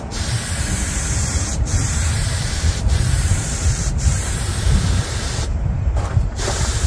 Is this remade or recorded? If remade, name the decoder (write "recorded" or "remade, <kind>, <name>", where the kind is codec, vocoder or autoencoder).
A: remade, vocoder, BigVGAN v2